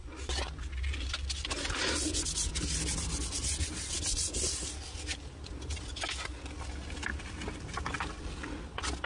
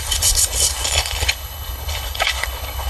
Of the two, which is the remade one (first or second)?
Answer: second